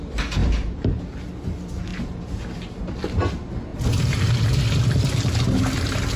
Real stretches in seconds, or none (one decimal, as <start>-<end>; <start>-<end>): 0.0-0.4; 1.0-1.9; 2.8-3.7; 4.2-6.2